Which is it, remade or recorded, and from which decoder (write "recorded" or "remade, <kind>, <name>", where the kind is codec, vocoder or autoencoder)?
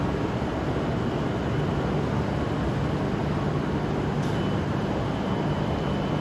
recorded